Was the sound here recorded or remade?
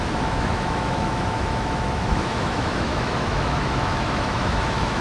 remade